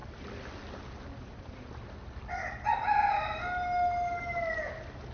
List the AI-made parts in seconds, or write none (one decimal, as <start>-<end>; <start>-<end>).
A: none